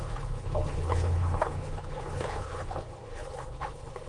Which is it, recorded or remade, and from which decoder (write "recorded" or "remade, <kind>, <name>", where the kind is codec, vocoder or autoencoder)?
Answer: remade, codec, HILCodec